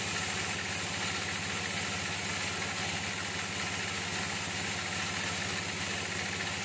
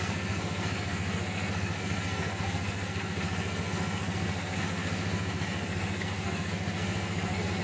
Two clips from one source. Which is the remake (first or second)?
second